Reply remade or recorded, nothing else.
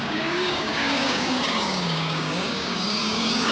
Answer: remade